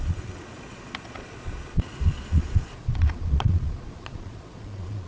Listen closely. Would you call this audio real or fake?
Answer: fake